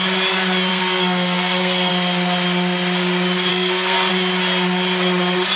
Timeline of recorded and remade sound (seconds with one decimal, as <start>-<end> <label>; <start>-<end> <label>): 0.0-0.7 recorded; 0.7-1.9 remade; 1.9-3.5 recorded; 3.5-4.1 remade; 4.1-5.6 recorded